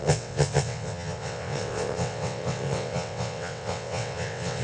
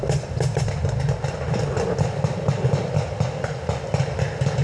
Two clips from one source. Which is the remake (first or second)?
first